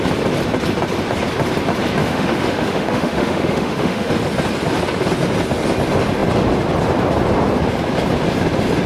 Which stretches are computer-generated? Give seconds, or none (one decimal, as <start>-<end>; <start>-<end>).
2.0-4.1